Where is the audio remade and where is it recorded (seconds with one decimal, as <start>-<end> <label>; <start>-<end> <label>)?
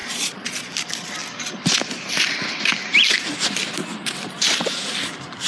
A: 0.0-0.7 remade; 0.7-5.5 recorded